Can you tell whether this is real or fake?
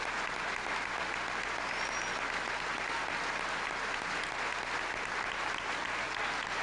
real